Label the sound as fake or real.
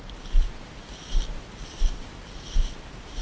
real